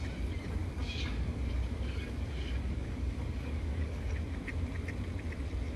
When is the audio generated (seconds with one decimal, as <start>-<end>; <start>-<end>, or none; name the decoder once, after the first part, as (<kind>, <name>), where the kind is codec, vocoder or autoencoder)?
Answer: 0.6-4.1 (codec, DAC)